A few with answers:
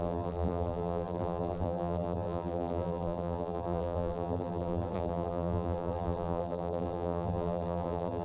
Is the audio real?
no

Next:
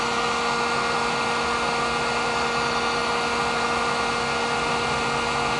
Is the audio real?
yes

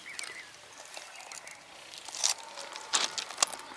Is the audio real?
yes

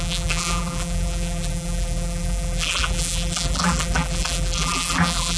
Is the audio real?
no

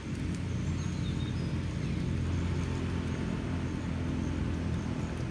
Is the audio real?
yes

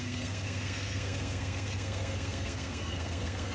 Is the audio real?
no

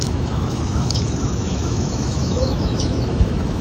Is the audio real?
no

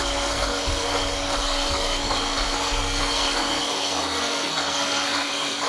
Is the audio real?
no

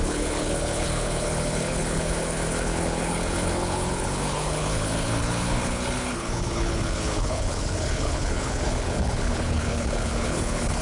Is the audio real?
no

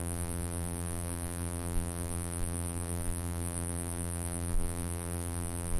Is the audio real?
no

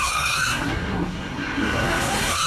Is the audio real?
no